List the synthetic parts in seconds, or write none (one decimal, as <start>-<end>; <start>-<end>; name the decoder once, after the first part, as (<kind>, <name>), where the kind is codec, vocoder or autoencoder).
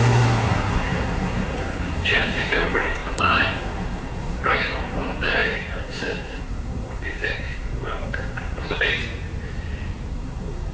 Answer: 0.0-8.9 (codec, SNAC); 10.1-10.7